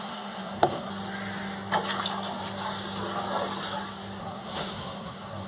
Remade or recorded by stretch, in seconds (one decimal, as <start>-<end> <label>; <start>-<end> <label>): 0.0-0.9 remade; 0.9-4.2 recorded; 4.2-5.5 remade